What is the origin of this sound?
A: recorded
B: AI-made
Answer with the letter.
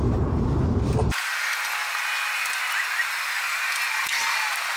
A